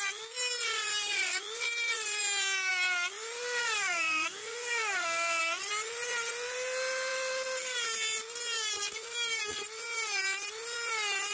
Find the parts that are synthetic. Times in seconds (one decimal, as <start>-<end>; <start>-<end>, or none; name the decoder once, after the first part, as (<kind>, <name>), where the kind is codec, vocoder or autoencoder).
3.6-5.4 (codec, SNAC)